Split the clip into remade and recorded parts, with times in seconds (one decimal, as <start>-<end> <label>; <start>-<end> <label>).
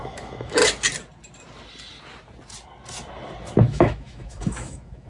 0.0-0.6 remade; 0.6-3.6 recorded; 3.6-5.1 remade